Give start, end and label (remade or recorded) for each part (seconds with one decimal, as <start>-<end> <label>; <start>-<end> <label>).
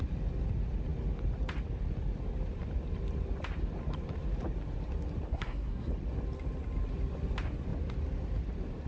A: 0.0-5.3 recorded; 5.3-5.9 remade; 5.9-8.9 recorded